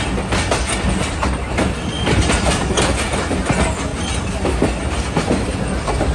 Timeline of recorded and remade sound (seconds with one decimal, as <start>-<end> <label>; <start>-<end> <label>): 0.0-6.1 recorded